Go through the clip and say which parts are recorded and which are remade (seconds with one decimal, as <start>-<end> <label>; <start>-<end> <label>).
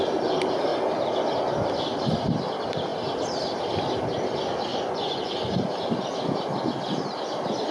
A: 0.0-4.7 recorded; 4.7-5.3 remade; 5.3-7.7 recorded